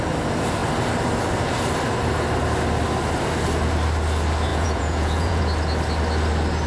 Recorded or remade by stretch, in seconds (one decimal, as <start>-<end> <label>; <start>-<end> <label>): 0.0-4.5 recorded; 4.5-5.4 remade; 5.4-6.7 recorded